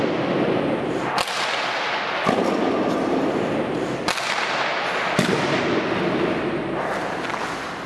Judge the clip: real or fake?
real